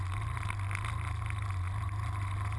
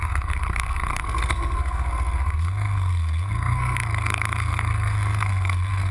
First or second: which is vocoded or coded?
second